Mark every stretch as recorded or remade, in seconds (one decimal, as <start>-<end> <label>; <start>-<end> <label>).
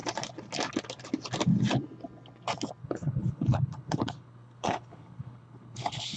0.0-2.8 recorded; 2.8-6.2 remade